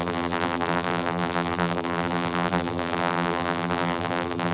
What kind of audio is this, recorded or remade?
remade